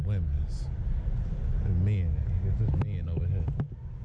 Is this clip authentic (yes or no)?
yes